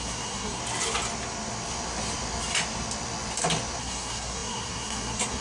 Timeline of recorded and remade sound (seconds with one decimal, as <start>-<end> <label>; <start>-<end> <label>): 0.0-0.6 remade; 0.6-3.8 recorded; 3.8-5.4 remade